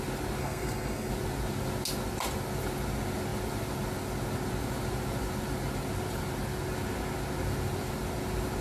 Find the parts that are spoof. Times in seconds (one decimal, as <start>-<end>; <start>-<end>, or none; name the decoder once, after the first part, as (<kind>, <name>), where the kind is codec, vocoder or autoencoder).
0.4-1.1 (codec, SNAC)